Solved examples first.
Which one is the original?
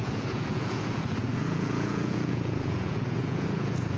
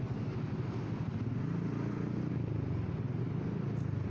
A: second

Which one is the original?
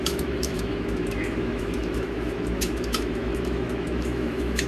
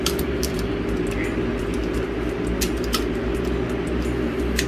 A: second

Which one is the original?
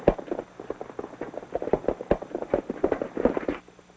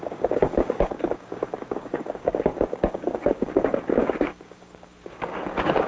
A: first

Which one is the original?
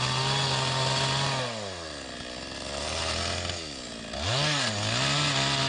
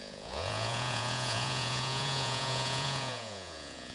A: first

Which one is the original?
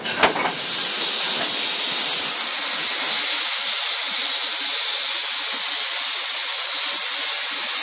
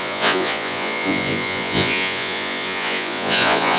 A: first